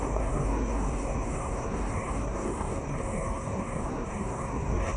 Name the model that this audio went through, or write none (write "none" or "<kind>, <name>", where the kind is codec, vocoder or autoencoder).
codec, SNAC